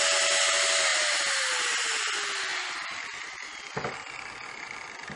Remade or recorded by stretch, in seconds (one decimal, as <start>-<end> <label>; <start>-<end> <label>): 0.0-5.2 recorded